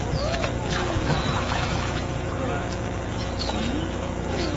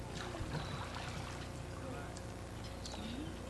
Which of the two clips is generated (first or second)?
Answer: first